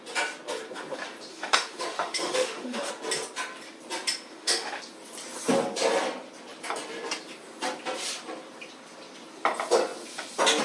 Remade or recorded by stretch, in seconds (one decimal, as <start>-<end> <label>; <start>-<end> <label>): 0.0-1.3 recorded; 1.3-2.9 remade; 2.9-4.3 recorded; 4.3-4.8 remade; 4.8-10.6 recorded